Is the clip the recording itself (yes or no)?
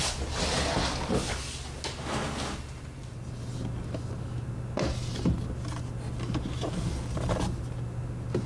yes